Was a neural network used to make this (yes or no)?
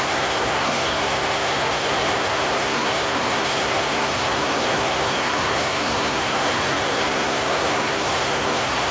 yes